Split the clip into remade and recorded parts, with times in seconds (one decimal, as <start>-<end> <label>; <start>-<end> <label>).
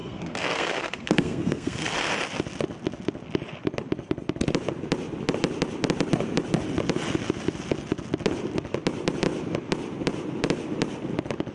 0.0-2.1 remade; 2.1-11.5 recorded